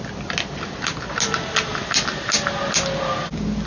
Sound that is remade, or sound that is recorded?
recorded